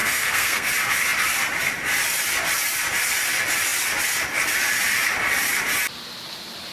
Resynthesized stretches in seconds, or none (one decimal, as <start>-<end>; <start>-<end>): 0.0-0.7